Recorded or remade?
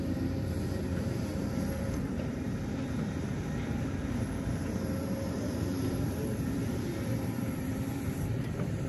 remade